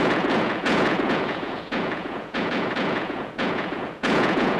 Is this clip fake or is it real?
fake